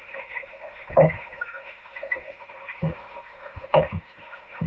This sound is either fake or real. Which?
fake